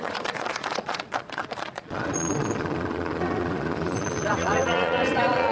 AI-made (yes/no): yes